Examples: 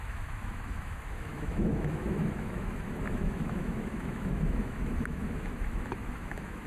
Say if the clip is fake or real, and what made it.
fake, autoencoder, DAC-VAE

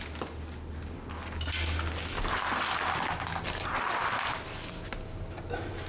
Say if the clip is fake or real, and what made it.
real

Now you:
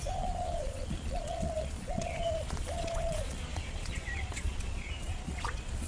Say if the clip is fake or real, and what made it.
fake, vocoder, Vocos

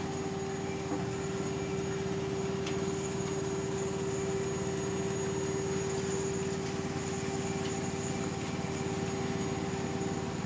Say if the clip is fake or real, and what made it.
real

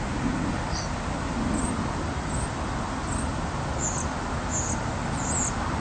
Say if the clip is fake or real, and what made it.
real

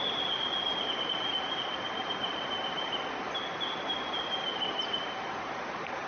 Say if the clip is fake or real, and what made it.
real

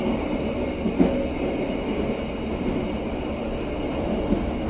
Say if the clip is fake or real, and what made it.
real